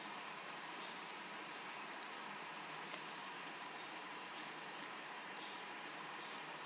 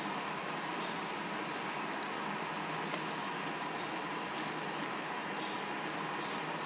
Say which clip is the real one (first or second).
second